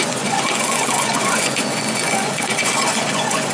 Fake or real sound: fake